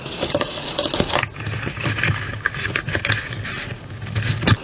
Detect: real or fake real